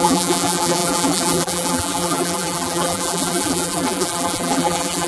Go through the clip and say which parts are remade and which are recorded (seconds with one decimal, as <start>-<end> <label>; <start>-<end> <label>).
0.0-5.1 remade